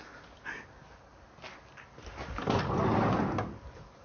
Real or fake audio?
real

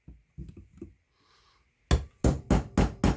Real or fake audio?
real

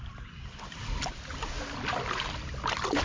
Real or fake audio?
real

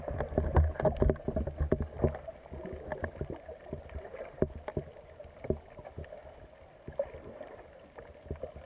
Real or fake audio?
real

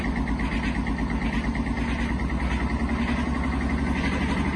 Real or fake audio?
real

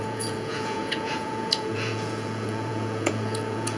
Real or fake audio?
fake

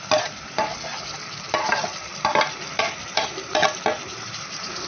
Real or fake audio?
real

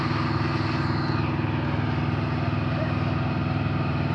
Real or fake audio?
real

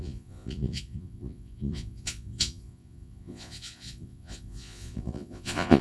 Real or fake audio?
fake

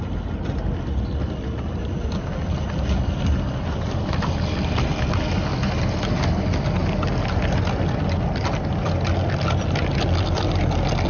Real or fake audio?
real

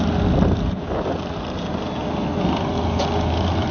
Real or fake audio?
real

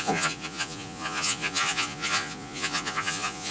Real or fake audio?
fake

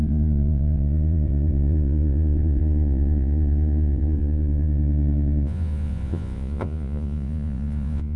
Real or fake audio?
fake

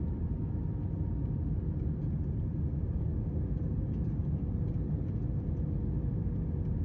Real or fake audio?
real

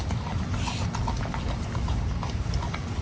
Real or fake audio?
real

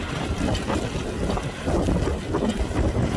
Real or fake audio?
real